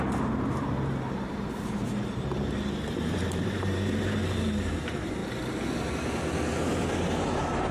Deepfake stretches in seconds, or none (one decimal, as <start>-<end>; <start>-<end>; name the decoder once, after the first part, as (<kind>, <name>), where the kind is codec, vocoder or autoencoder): 0.0-5.2 (vocoder, BigVGAN v2); 7.0-7.7